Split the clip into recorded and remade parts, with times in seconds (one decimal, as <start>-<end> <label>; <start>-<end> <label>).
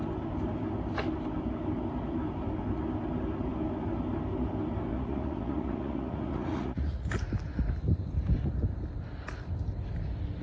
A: 0.0-4.9 recorded; 4.9-7.1 remade; 7.1-10.4 recorded